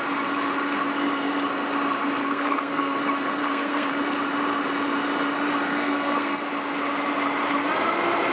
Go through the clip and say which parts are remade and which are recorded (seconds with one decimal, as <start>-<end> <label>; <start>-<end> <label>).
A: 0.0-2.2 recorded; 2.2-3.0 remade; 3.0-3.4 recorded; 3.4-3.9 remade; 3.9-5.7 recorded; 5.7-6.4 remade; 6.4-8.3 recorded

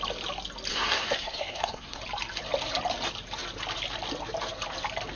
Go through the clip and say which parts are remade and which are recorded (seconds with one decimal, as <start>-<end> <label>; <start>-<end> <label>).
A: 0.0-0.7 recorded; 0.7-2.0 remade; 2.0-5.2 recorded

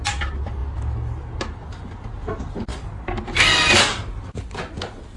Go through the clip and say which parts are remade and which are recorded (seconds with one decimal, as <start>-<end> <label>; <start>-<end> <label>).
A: 0.0-5.2 recorded

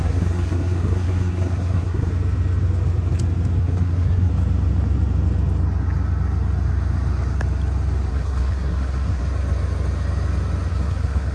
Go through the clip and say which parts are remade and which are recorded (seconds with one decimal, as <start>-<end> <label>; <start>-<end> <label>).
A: 0.0-2.1 remade; 2.1-3.6 recorded; 3.6-4.3 remade; 4.3-8.1 recorded; 8.1-9.2 remade; 9.2-10.7 recorded; 10.7-11.3 remade

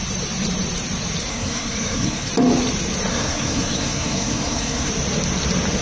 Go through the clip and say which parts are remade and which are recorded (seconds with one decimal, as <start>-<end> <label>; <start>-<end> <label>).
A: 0.0-1.3 recorded; 1.3-2.3 remade; 2.3-3.1 recorded; 3.1-4.9 remade; 4.9-5.8 recorded